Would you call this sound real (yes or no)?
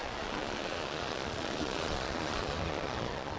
no